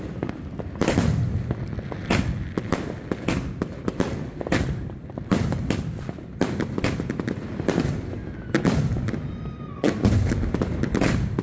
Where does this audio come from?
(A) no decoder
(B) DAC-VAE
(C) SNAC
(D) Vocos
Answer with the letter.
A